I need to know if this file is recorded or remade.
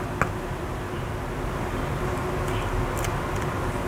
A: recorded